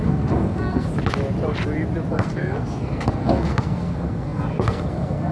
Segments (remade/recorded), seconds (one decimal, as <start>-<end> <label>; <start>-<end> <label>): 0.0-0.9 remade; 0.9-2.1 recorded; 2.1-5.3 remade